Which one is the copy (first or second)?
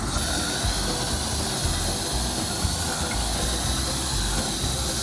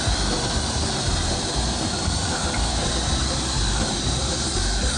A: second